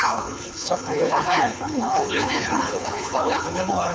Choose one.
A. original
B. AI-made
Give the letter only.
B